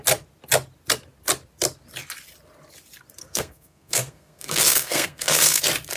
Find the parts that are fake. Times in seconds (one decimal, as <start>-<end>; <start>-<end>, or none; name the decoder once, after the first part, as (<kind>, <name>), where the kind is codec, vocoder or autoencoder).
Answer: 3.2-5.6 (codec, SNAC)